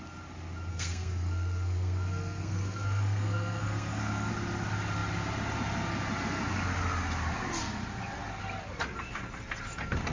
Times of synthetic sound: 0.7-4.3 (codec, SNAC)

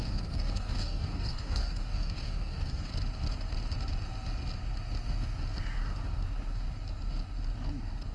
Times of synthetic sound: 0.0-2.9 (codec, DAC)

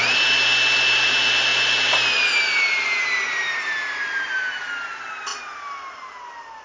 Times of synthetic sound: none

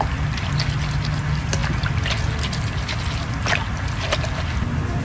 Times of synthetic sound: none

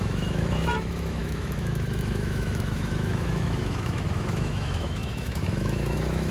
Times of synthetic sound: 0.0-6.3 (autoencoder, DAC-VAE)